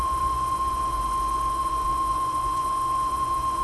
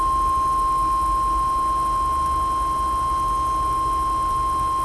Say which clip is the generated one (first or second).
first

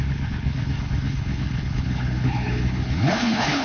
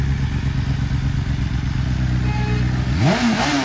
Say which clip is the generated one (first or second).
first